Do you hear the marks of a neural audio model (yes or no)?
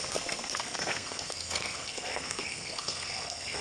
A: yes